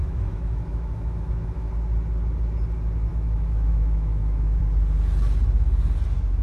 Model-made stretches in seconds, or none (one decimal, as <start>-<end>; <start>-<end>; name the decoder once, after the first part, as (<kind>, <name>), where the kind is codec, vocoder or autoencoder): 0.0-1.7 (autoencoder, DAC-VAE); 3.1-4.6